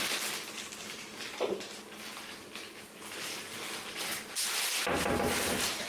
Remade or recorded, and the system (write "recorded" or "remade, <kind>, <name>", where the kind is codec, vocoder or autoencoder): recorded